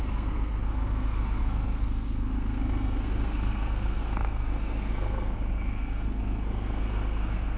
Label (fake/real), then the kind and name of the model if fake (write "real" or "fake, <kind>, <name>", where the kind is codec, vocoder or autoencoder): fake, codec, SNAC